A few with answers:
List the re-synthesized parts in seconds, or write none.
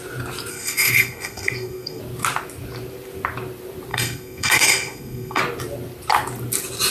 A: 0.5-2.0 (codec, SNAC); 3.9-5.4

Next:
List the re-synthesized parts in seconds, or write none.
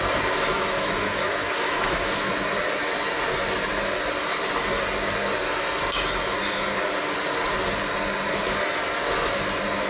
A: 0.5-2.3 (autoencoder, DAC-VAE)